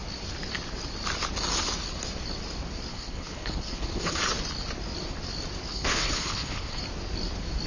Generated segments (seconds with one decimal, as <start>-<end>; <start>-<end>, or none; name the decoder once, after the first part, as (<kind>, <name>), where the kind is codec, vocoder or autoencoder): 2.9-4.2 (codec, HILCodec); 5.7-6.8